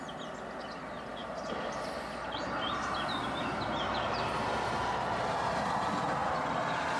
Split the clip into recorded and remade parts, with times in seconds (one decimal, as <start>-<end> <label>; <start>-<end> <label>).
0.0-7.0 recorded